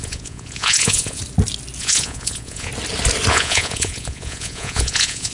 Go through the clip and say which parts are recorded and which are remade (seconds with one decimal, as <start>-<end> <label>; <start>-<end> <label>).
0.0-1.2 remade; 1.2-1.8 recorded; 1.8-2.7 remade; 2.7-3.3 recorded; 3.3-5.3 remade